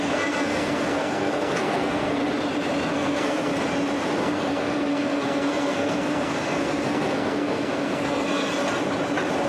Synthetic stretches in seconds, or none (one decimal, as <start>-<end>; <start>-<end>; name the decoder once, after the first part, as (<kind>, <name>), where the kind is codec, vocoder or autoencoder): 0.0-2.2 (codec, SNAC); 2.9-3.5; 4.2-8.5